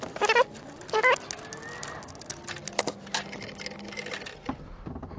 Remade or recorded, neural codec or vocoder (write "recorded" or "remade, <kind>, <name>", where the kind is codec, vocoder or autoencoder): recorded